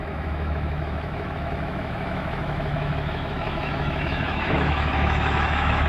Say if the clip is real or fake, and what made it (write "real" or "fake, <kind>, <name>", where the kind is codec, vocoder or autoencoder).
fake, autoencoder, DAC-VAE